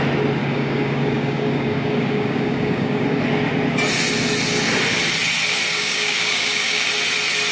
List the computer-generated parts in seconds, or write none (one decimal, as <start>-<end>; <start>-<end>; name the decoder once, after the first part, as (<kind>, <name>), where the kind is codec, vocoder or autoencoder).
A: 0.4-3.2 (codec, DAC); 5.7-6.9